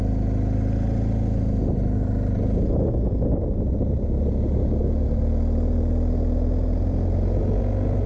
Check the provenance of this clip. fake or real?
real